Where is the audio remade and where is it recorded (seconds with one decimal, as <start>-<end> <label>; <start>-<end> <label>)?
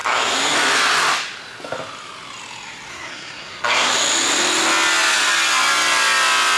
0.0-2.9 recorded; 2.9-3.9 remade; 3.9-6.6 recorded